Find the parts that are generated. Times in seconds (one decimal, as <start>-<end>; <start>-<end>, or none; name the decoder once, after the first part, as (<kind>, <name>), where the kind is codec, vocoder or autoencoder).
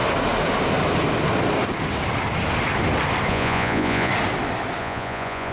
3.3-4.1 (vocoder, Vocos); 4.8-5.5